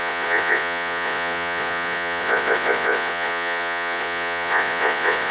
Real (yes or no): no